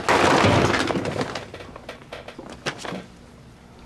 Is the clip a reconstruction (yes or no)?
no